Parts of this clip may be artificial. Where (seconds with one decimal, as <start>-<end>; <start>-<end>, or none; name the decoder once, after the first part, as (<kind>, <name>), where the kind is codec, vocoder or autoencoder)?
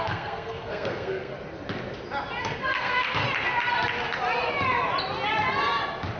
0.0-1.3 (codec, SNAC); 2.4-3.2